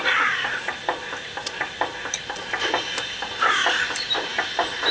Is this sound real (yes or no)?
yes